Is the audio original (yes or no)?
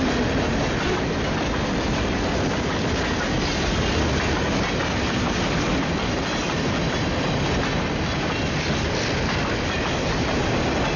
yes